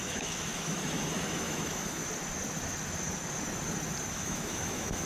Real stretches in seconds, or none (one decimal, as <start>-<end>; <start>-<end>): 2.0-4.1